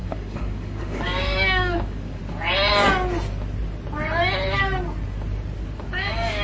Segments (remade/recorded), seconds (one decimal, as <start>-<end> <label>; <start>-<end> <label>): 0.0-2.2 remade; 2.2-6.0 recorded; 6.0-6.4 remade